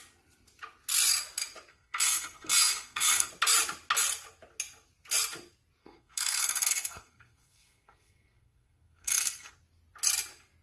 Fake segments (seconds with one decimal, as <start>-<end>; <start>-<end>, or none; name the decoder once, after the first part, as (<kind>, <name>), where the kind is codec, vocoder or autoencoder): 1.7-3.3 (codec, SNAC); 5.8-9.5